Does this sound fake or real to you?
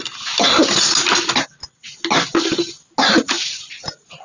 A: real